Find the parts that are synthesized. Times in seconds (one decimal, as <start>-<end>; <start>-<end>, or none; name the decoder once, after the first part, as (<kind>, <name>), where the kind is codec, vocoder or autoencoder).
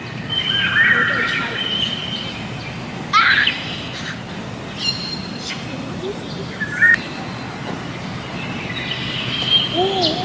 none